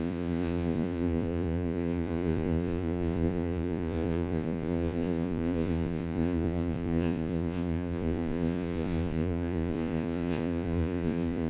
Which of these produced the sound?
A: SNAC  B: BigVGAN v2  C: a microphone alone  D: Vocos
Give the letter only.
D